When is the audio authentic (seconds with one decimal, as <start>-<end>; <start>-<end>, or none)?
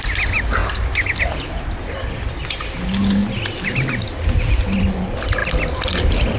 0.0-6.4